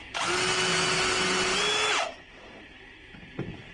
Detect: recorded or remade recorded